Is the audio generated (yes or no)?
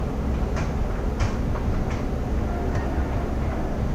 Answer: no